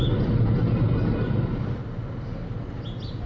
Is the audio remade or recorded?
recorded